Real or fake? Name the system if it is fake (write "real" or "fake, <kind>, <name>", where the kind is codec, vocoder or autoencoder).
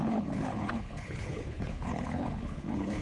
fake, codec, HILCodec